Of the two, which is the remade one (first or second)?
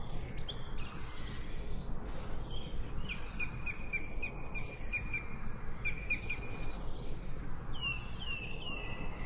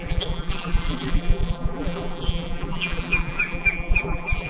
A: second